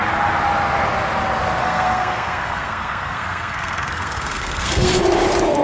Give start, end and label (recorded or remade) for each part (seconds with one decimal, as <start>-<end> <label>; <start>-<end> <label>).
0.0-1.6 recorded; 1.6-5.0 remade; 5.0-5.6 recorded

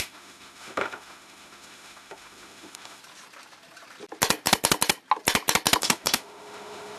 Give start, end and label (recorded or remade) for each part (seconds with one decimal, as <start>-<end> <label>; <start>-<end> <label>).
0.0-3.0 remade; 3.0-5.8 recorded; 5.8-7.0 remade